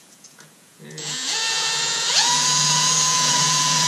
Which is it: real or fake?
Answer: fake